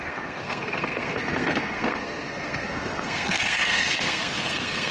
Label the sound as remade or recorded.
remade